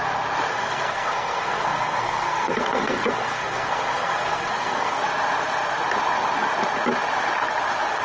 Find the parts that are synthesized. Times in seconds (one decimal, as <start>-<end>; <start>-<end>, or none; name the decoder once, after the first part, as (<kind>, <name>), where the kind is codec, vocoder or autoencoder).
0.5-5.0 (codec, SNAC)